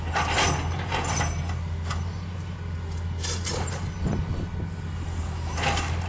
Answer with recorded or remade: recorded